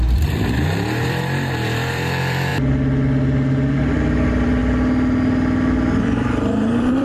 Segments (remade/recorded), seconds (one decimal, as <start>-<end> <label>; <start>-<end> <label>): 0.0-2.5 remade; 2.5-3.9 recorded; 3.9-4.6 remade; 4.6-6.0 recorded; 6.0-7.0 remade